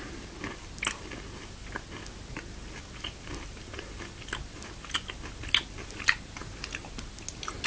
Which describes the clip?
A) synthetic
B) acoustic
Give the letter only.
B